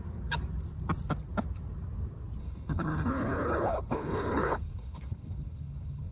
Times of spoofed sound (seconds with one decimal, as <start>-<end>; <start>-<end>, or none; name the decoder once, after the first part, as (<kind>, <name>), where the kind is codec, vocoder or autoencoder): 2.4-6.1 (codec, HILCodec)